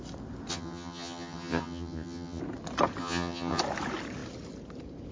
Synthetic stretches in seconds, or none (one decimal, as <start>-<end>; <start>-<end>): 0.5-2.4; 3.0-3.6